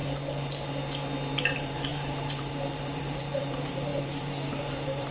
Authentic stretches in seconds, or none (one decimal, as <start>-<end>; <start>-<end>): 0.0-1.4